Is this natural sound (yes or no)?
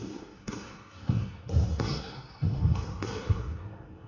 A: no